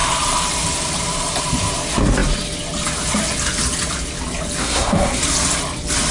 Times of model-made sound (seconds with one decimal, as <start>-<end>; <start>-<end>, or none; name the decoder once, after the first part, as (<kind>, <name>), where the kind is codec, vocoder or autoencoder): 4.6-5.2 (codec, SNAC)